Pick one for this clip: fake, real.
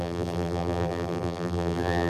fake